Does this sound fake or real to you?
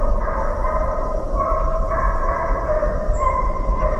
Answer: real